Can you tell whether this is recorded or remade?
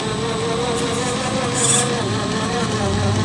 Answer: recorded